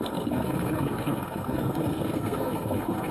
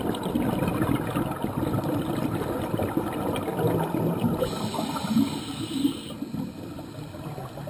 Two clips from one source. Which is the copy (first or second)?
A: first